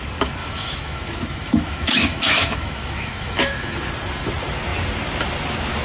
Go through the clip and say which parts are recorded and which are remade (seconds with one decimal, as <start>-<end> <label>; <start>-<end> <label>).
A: 0.0-0.4 recorded; 0.4-3.9 remade; 3.9-5.8 recorded